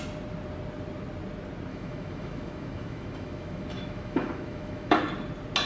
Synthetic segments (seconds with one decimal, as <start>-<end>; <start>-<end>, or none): 1.7-5.0